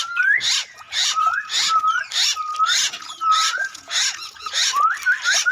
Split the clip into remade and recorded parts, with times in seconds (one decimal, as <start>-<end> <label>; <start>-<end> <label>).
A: 0.0-0.6 recorded; 0.6-1.8 remade; 1.8-2.8 recorded; 2.8-4.8 remade; 4.8-5.5 recorded

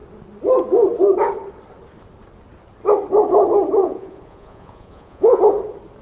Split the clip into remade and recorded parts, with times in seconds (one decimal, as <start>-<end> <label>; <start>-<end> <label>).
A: 0.0-3.8 recorded; 3.8-5.4 remade; 5.4-6.0 recorded

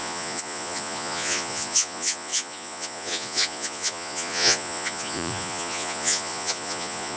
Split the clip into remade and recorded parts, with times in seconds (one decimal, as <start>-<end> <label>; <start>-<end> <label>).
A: 0.0-7.2 remade

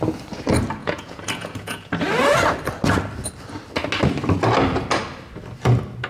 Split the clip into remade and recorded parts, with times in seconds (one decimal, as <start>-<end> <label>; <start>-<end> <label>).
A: 0.0-0.8 recorded; 0.8-1.9 remade; 1.9-6.1 recorded

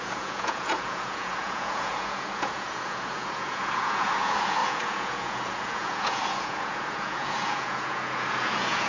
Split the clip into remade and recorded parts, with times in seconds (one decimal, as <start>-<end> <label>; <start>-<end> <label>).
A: 0.0-8.9 remade

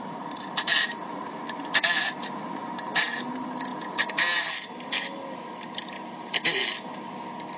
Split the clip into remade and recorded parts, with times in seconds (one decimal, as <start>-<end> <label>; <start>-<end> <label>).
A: 0.0-3.7 remade; 3.7-7.6 recorded

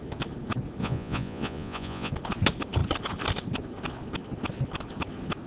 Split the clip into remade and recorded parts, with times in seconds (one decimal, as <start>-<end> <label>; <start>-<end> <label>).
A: 0.0-0.8 recorded; 0.8-2.1 remade; 2.1-5.5 recorded

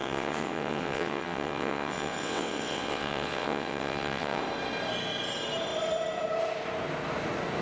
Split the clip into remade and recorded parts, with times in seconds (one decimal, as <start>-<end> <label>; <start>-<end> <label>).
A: 0.0-4.4 remade; 4.4-7.6 recorded